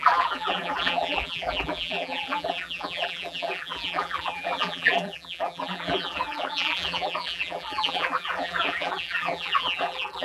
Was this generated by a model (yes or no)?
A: yes